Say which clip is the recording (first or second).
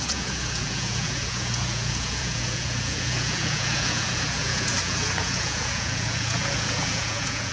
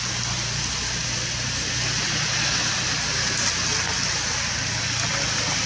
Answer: second